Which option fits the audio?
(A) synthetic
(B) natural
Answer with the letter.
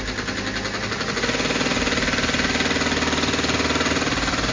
B